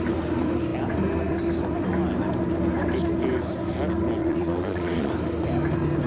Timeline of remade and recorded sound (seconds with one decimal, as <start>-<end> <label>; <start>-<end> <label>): 0.0-4.2 recorded; 4.2-5.1 remade; 5.1-6.1 recorded